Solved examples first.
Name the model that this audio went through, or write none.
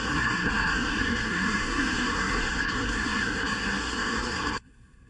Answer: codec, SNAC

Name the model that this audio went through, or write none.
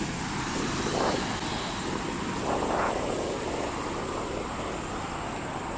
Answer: none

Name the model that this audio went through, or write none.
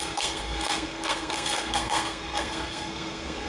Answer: codec, SNAC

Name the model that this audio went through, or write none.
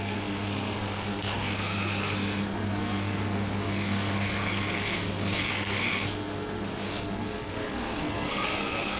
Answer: codec, SNAC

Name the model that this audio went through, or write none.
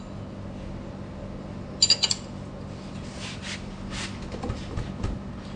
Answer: none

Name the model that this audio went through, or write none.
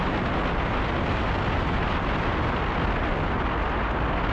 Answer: none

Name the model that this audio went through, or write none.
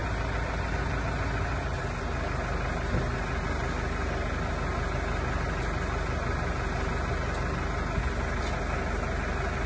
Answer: none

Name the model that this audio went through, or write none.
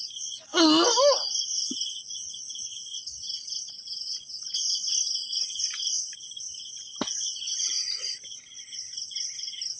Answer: none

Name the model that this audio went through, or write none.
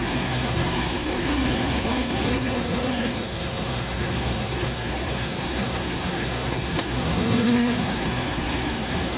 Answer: codec, SNAC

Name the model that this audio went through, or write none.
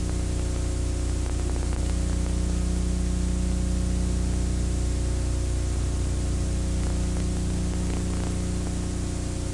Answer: none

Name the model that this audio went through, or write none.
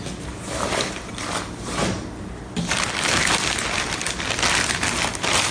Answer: none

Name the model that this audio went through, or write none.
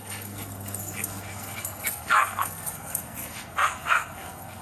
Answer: codec, SNAC